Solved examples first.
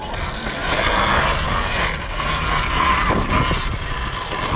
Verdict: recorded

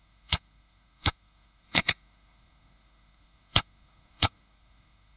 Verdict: remade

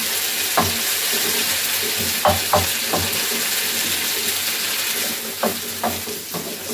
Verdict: recorded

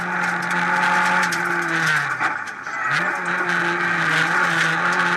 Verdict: recorded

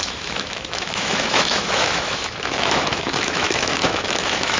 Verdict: remade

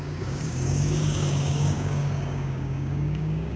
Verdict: remade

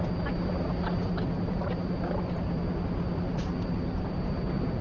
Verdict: recorded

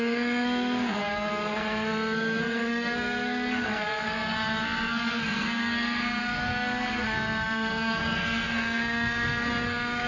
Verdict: remade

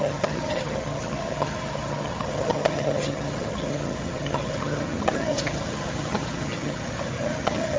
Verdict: remade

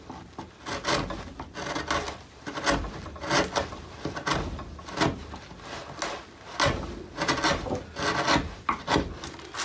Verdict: recorded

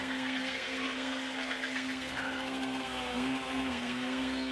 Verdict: remade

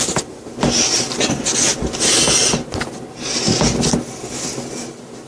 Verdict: recorded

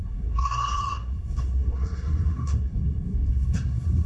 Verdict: remade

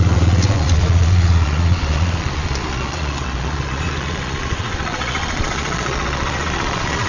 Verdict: remade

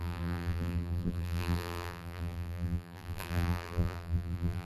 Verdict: remade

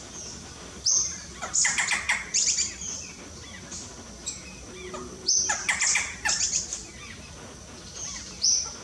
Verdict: recorded